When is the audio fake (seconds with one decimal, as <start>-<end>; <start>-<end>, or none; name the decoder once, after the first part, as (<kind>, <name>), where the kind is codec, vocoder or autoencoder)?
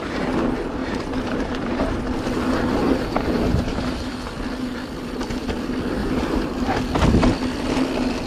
0.8-2.0 (vocoder, BigVGAN v2); 2.8-4.1; 6.0-6.8